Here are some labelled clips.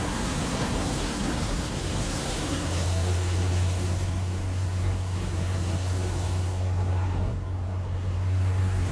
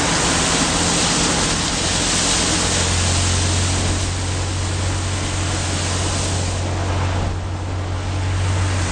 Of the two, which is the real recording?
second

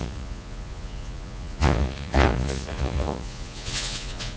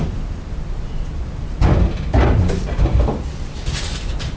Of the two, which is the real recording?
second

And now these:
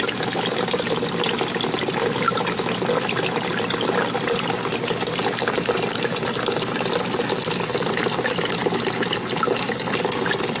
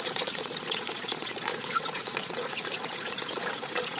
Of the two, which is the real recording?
first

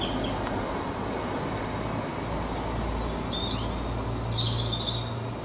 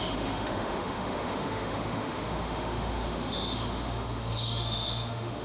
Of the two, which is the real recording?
first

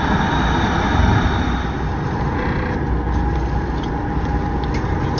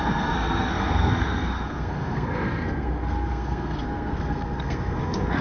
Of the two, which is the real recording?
first